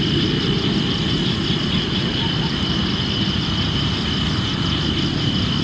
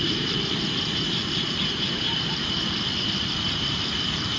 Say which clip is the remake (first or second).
second